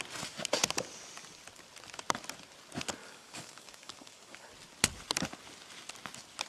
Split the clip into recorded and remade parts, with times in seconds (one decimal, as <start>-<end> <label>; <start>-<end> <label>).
0.0-3.0 recorded; 3.0-4.5 remade; 4.5-6.5 recorded